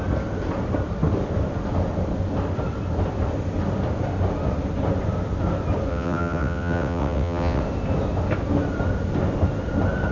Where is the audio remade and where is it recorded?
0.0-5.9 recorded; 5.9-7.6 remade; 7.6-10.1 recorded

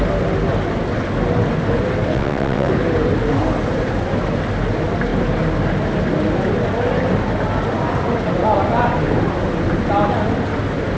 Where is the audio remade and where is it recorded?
0.0-2.1 recorded; 2.1-2.7 remade; 2.7-11.0 recorded

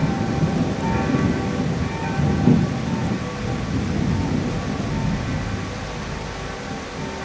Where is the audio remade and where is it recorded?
0.0-7.2 recorded

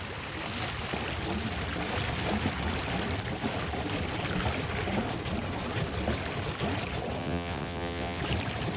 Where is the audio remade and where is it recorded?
0.0-7.2 recorded; 7.2-8.2 remade; 8.2-8.8 recorded

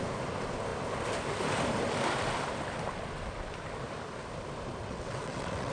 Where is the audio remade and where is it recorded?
0.0-4.8 recorded; 4.8-5.7 remade

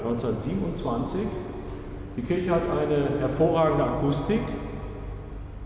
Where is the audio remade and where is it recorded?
0.0-5.7 recorded